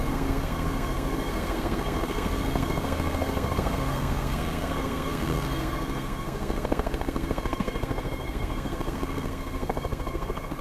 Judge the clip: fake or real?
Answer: fake